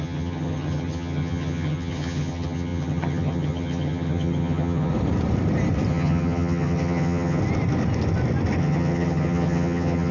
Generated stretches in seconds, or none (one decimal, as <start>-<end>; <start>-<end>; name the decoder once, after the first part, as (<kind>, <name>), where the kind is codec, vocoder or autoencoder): 0.0-4.9 (vocoder, HiFi-GAN); 5.9-7.4; 8.6-10.1